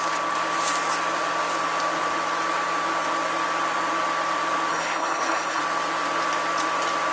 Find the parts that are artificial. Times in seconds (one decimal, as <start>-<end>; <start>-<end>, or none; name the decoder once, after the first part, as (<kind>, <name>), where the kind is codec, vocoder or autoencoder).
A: 4.7-5.6 (codec, HILCodec)